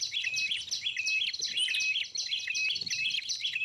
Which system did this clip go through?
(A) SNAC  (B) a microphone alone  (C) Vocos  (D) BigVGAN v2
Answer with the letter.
B